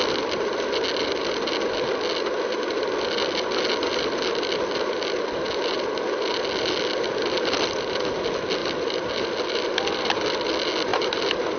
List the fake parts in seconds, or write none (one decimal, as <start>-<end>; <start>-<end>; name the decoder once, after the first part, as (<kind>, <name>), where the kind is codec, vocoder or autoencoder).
8.6-10.2 (vocoder, BigVGAN v2); 10.9-11.6